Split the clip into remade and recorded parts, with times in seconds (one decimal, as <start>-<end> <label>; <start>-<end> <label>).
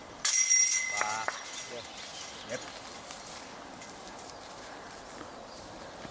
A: 0.0-6.1 recorded